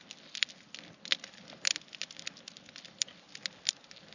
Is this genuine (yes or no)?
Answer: yes